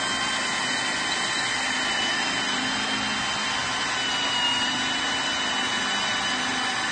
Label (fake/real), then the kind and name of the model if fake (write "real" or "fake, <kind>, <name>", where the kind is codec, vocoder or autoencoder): real